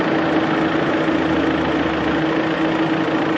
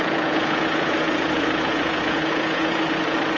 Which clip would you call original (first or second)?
first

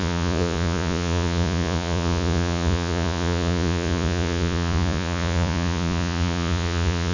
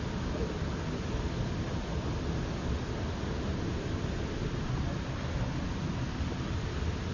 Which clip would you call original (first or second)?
second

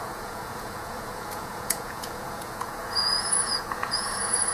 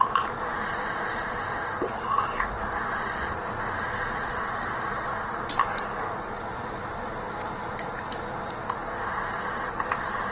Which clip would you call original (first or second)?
second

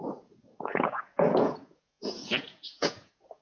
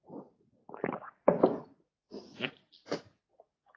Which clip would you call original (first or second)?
second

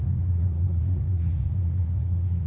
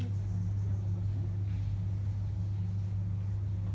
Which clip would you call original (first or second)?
second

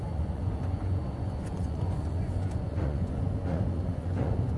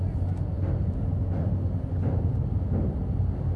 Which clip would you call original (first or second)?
second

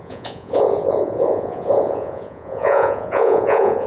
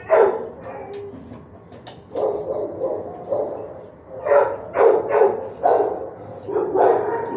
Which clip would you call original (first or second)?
second